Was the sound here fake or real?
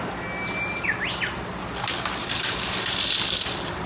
real